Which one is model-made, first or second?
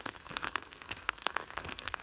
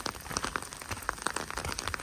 first